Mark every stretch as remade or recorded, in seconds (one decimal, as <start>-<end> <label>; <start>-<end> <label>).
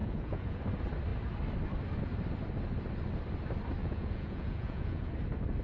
0.0-0.6 remade; 0.6-3.8 recorded; 3.8-5.1 remade; 5.1-5.6 recorded